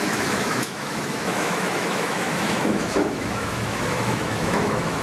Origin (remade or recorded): remade